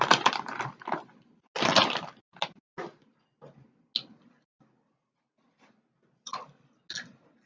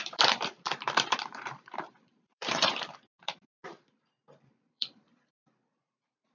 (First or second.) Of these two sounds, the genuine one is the first